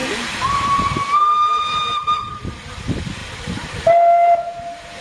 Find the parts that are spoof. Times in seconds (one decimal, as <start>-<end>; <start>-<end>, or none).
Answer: 0.0-2.7; 3.2-3.7